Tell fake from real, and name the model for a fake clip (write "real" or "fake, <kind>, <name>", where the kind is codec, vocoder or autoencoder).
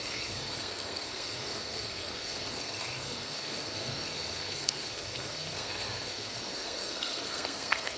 fake, codec, SNAC